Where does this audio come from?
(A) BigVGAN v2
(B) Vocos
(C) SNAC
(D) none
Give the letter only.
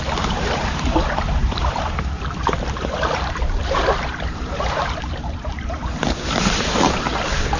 A